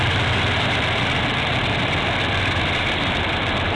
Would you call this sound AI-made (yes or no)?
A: yes